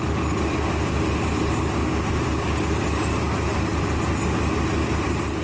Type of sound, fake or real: real